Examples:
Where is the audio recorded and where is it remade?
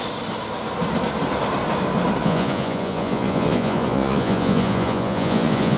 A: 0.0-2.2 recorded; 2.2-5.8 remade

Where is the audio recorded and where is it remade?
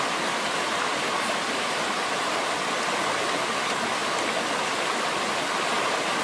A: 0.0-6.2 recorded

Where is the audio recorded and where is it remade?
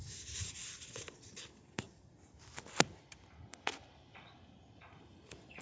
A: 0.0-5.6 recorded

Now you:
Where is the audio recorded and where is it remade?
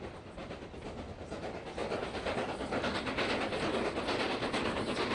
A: 0.0-5.1 recorded